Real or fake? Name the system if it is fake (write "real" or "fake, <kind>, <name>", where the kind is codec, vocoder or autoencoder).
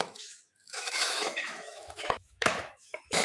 fake, autoencoder, DAC-VAE